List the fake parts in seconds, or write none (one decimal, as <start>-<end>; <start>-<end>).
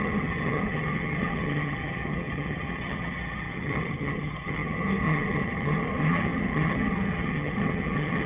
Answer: 0.0-8.3